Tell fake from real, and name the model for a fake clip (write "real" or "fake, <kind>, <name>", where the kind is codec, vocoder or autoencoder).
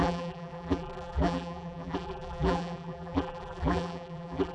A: fake, vocoder, BigVGAN v2